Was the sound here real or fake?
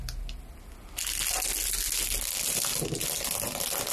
real